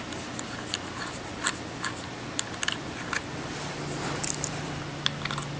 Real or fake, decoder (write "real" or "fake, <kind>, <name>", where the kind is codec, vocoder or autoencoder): real